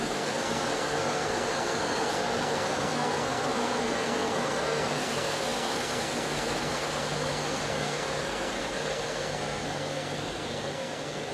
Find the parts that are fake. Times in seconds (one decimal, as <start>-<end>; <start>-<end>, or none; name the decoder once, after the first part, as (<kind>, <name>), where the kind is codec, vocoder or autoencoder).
0.0-11.3 (codec, SNAC)